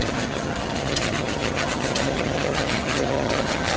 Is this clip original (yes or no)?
no